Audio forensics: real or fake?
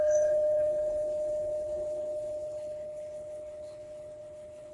fake